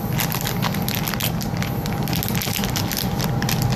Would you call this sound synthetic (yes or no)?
no